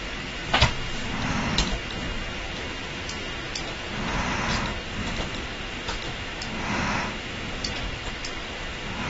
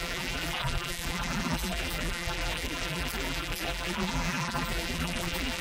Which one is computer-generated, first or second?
second